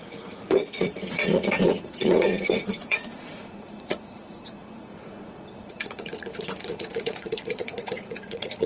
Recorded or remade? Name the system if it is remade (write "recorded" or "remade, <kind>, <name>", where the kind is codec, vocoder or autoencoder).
remade, vocoder, Vocos